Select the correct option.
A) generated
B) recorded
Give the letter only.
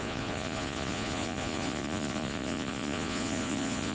A